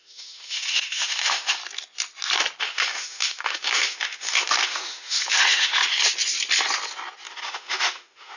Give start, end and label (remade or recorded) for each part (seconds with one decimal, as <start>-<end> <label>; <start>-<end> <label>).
0.0-1.6 remade; 1.6-2.6 recorded; 2.6-5.8 remade; 5.8-7.3 recorded; 7.3-8.4 remade